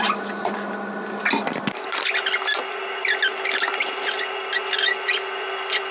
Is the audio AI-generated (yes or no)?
no